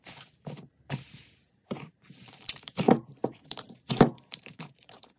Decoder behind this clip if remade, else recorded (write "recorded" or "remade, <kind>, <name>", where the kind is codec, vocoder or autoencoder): remade, vocoder, BigVGAN v2